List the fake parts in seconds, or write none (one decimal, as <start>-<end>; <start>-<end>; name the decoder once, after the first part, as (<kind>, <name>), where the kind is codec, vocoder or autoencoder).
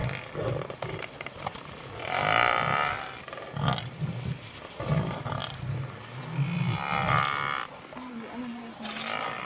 none